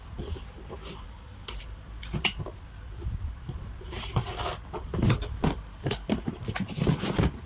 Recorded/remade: recorded